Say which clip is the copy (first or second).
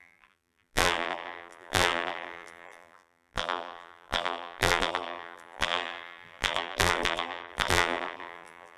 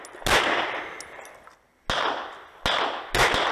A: first